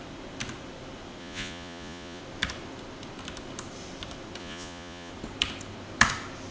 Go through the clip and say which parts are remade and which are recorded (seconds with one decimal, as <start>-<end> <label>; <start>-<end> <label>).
0.0-1.2 recorded; 1.2-2.2 remade; 2.2-4.4 recorded; 4.4-5.1 remade; 5.1-6.5 recorded